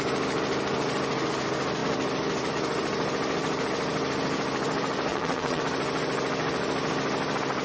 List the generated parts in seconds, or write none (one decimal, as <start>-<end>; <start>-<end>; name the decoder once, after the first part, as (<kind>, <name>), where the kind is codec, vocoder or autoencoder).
5.1-5.6 (vocoder, WaveNeXt)

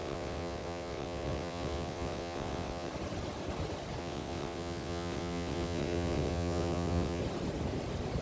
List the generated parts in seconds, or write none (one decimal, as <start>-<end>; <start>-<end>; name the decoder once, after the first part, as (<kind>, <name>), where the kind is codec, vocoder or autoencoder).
0.0-2.9 (vocoder, WaveNeXt); 4.0-7.2

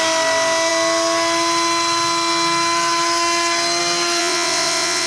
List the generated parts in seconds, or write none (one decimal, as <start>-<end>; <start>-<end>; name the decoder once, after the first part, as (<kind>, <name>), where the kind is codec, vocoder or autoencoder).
4.2-5.1 (vocoder, WaveNeXt)

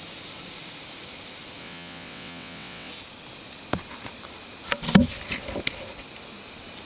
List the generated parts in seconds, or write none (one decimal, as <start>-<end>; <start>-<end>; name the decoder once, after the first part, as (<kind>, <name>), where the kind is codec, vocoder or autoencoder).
1.6-2.9 (vocoder, WaveNeXt)

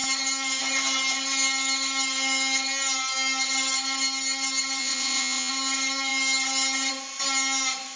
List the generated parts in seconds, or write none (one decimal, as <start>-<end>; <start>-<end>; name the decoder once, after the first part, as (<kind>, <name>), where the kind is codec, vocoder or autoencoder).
4.8-5.5 (vocoder, WaveNeXt)

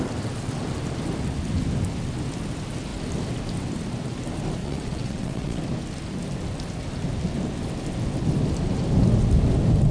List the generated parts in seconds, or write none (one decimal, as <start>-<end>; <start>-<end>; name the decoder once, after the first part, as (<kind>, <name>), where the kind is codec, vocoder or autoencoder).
4.6-5.6 (vocoder, WaveNeXt)

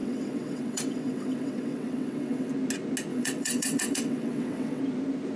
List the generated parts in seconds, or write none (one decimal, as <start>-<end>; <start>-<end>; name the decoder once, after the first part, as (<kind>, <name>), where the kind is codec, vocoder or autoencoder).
0.0-2.5 (vocoder, WaveNeXt); 3.1-4.8